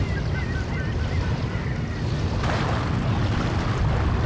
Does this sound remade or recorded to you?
recorded